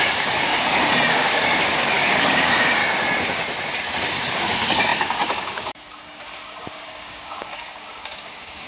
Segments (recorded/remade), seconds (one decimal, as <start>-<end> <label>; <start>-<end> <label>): 0.0-0.5 remade; 0.5-1.1 recorded; 1.1-2.8 remade; 2.8-4.3 recorded; 4.3-8.7 remade